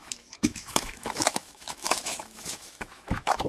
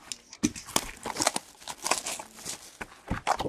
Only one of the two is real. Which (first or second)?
second